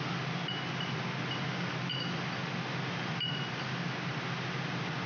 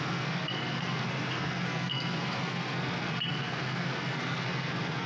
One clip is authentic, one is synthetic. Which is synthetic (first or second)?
second